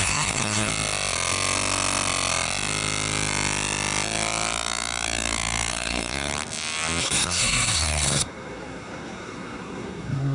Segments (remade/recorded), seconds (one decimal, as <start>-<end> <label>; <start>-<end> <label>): 0.0-0.7 remade; 0.7-5.7 recorded; 5.7-6.3 remade; 6.3-7.0 recorded; 7.0-10.3 remade